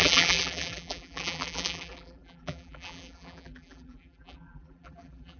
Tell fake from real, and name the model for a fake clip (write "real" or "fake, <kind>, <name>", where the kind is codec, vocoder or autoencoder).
fake, vocoder, BigVGAN v2